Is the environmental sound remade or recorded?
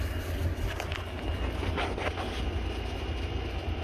recorded